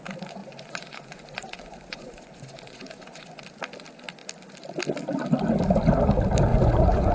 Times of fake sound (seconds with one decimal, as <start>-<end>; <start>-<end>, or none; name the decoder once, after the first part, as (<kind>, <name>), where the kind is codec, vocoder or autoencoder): 0.4-3.4 (vocoder, Vocos); 6.5-7.1